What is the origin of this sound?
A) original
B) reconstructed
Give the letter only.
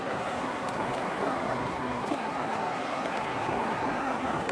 B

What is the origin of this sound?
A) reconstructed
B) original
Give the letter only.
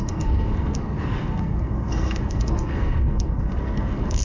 A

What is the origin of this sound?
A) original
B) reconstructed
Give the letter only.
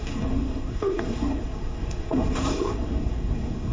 B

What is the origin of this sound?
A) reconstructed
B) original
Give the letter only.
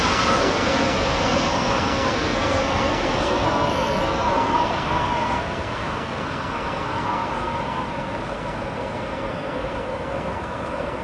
A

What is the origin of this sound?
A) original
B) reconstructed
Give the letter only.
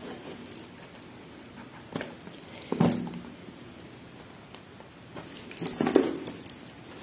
A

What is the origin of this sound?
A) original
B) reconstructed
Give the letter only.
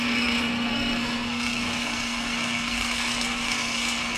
B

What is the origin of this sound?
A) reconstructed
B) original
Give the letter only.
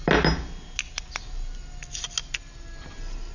B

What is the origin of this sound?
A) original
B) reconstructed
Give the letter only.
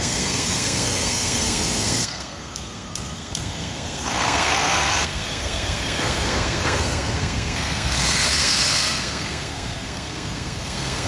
B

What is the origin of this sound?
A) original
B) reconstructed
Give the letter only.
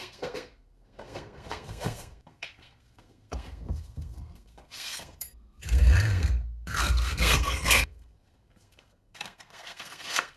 B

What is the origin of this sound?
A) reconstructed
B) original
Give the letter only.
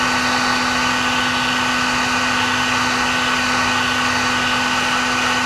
B